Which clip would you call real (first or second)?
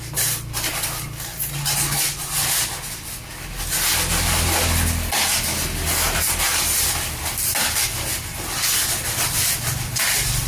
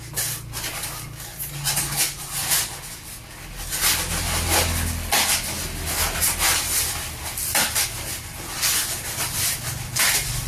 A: second